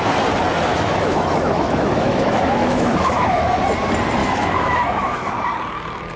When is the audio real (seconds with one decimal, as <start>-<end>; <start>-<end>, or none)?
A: 0.0-0.7; 3.6-4.2; 5.3-6.2